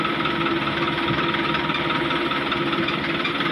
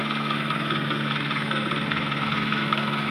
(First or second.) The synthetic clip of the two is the second